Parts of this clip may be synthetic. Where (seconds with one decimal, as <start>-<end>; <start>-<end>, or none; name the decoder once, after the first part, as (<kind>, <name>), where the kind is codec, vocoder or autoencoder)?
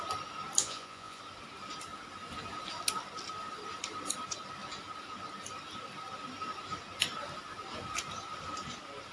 0.6-1.2 (vocoder, Vocos)